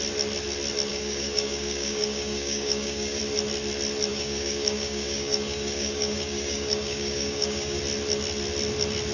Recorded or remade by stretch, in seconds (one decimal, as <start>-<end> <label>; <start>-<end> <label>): 0.0-0.9 recorded; 0.9-3.2 remade; 3.2-4.1 recorded; 4.1-7.8 remade; 7.8-9.1 recorded